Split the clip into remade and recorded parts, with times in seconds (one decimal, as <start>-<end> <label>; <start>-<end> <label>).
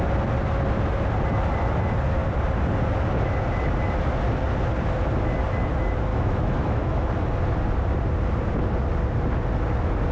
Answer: 0.0-6.1 recorded; 6.1-7.1 remade; 7.1-10.1 recorded